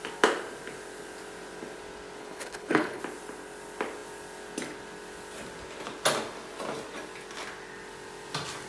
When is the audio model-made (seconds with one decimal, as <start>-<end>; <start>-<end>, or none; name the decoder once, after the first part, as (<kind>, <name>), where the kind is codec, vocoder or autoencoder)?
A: 2.2-3.0 (codec, HILCodec)